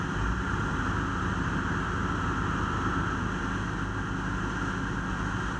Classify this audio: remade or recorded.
recorded